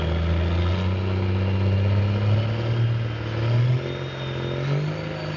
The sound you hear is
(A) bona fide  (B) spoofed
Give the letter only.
A